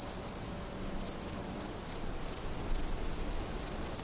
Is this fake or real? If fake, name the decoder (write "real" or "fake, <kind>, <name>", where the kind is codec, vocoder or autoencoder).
real